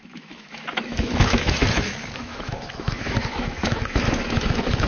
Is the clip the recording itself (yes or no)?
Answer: no